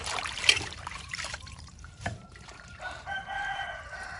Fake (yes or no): yes